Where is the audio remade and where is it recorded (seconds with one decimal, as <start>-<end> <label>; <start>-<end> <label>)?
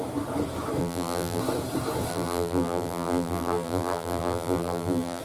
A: 0.0-0.8 recorded; 0.8-1.4 remade; 1.4-2.1 recorded; 2.1-5.2 remade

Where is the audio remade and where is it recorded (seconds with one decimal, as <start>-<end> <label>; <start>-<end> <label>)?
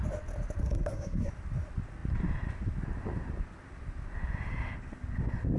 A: 0.0-0.6 recorded; 0.6-1.3 remade; 1.3-5.6 recorded